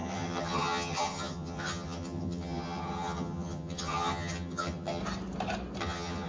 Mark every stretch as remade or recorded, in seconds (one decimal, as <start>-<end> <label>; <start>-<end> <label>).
0.0-5.0 remade; 5.0-5.8 recorded; 5.8-6.3 remade